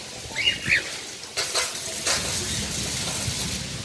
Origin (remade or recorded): recorded